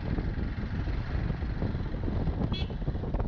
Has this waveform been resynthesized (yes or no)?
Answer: no